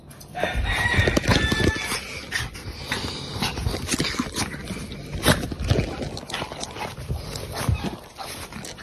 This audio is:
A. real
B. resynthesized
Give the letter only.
A